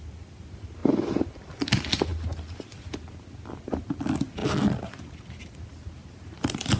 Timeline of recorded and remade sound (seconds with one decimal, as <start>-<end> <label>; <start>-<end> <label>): 0.0-6.0 recorded; 6.0-6.8 remade